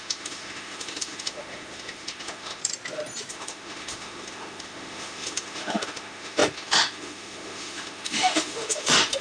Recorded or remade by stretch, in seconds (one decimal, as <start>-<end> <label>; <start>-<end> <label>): 0.0-2.6 remade; 2.6-3.3 recorded; 3.3-9.2 remade